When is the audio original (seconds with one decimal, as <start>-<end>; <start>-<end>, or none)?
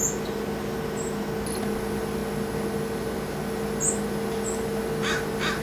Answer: 0.0-5.6